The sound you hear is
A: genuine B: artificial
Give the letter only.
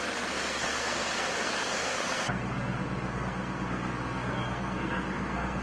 B